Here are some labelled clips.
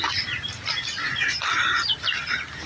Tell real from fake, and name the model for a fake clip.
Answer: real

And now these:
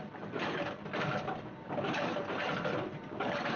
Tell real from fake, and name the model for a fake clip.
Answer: real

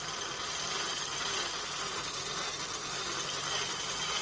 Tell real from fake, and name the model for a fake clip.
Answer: fake, vocoder, BigVGAN v2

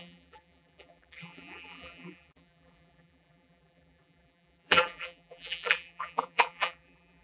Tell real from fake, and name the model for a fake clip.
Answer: fake, vocoder, BigVGAN v2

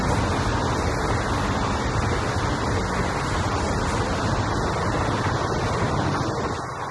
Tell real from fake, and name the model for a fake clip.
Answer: real